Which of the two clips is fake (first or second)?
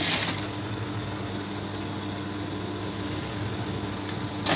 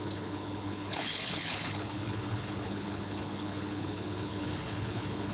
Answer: second